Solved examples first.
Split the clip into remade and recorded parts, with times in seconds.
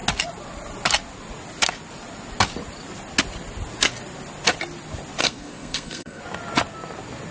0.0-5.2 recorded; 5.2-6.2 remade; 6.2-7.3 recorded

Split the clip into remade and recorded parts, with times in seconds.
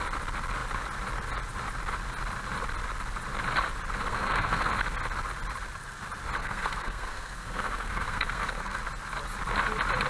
0.0-4.1 recorded; 4.1-4.7 remade; 4.7-6.4 recorded; 6.4-8.8 remade; 8.8-10.1 recorded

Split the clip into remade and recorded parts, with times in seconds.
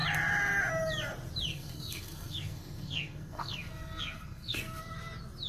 0.0-1.5 recorded; 1.5-4.8 remade; 4.8-5.5 recorded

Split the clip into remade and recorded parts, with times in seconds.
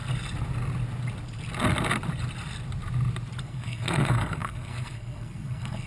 0.0-3.4 recorded; 3.4-5.9 remade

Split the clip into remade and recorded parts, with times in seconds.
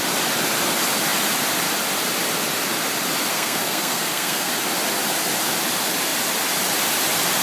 0.0-3.3 recorded; 3.3-4.5 remade; 4.5-7.4 recorded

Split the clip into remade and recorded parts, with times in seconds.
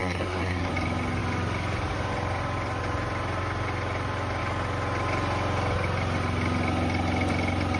0.0-0.7 remade; 0.7-7.8 recorded